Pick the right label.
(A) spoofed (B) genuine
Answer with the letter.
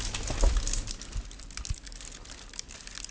B